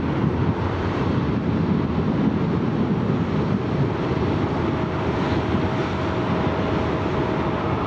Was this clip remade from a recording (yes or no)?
no